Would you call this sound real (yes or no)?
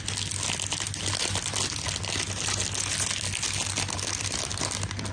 yes